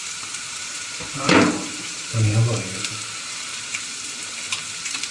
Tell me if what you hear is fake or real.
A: fake